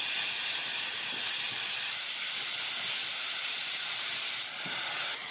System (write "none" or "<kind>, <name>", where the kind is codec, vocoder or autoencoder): none